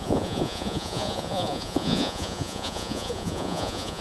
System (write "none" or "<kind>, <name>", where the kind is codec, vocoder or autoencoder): vocoder, Vocos